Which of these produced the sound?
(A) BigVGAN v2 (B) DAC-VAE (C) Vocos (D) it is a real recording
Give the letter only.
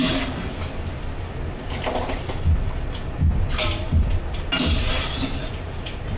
D